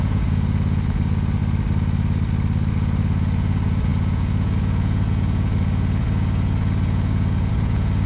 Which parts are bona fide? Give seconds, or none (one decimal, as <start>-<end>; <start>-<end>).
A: 1.4-2.7